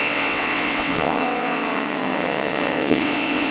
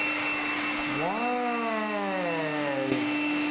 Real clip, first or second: second